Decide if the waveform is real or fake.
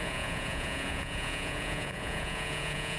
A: fake